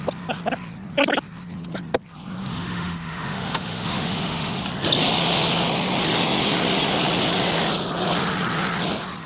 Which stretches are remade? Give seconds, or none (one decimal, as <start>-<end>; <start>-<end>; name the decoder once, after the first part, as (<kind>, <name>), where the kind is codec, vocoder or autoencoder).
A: 2.4-4.6 (autoencoder, DAC-VAE)